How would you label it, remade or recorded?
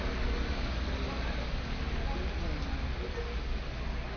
recorded